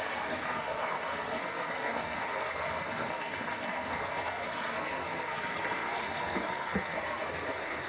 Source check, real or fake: fake